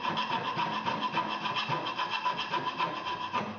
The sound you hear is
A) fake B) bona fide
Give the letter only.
B